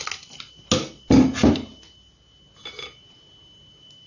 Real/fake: real